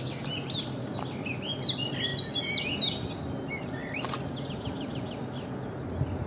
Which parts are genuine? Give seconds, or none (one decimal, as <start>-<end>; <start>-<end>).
0.0-6.3